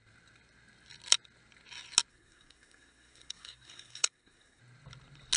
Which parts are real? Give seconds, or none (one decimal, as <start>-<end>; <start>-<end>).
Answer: 0.0-2.1; 4.6-5.4